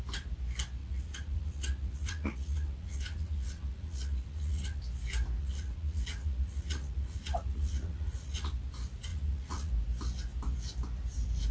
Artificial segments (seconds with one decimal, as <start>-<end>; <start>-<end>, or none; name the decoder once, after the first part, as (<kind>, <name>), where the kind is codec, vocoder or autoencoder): 0.8-4.8 (vocoder, Vocos); 5.4-8.5; 9.1-9.7

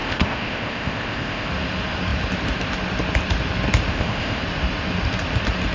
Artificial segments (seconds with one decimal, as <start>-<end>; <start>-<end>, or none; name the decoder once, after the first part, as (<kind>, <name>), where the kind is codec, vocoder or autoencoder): 0.0-1.5 (codec, ZipCodec); 3.9-4.4

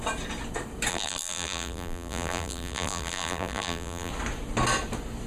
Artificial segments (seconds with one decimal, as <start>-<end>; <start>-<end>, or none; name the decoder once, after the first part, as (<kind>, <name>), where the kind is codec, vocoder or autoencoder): 0.9-4.1 (vocoder, BigVGAN v2)

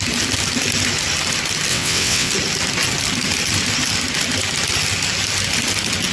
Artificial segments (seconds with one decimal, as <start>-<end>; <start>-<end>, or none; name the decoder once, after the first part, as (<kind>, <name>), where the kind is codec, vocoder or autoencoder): 1.7-2.3 (vocoder, WaveNeXt)

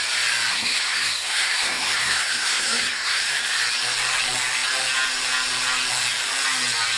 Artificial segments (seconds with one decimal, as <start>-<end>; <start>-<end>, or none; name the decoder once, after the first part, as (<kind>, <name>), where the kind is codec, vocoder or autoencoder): 0.5-3.4 (codec, SNAC)

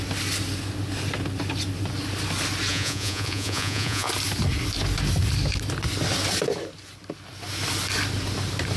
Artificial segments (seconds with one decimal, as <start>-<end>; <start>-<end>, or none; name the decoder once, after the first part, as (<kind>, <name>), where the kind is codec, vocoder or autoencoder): 2.7-4.1 (vocoder, Vocos)

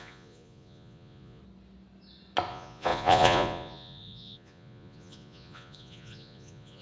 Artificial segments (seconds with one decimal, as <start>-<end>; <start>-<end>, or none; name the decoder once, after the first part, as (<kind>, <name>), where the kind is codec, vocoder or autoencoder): 0.0-1.4 (vocoder, Vocos); 2.5-6.8

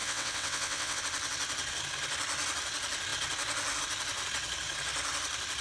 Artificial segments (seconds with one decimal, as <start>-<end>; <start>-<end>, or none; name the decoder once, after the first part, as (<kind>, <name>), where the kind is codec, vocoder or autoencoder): 0.0-1.0 (vocoder, WaveNeXt)